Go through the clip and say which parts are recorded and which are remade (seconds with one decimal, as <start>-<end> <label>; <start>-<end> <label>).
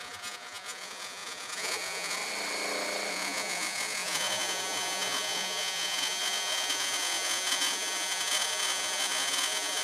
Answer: 0.0-2.2 remade; 2.2-3.1 recorded; 3.1-9.8 remade